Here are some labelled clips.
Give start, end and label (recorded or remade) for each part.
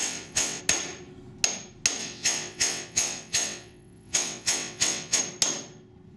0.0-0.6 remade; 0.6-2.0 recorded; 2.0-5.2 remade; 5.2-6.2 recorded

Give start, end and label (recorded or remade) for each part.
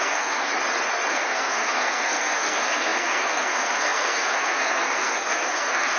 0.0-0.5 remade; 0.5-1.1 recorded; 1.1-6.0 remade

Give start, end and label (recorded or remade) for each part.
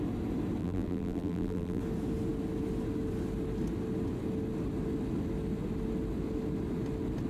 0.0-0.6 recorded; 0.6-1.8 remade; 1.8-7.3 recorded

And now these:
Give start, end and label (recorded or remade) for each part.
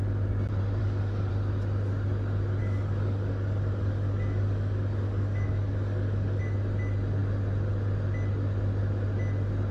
0.0-0.8 recorded; 0.8-1.3 remade; 1.3-2.6 recorded; 2.6-6.4 remade; 6.4-9.7 recorded